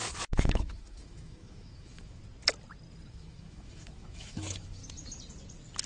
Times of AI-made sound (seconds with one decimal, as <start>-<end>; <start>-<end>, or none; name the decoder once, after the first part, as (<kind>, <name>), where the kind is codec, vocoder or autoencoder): 0.0-2.2 (autoencoder, DAC-VAE); 3.1-4.8